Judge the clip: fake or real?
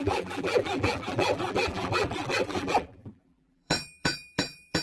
fake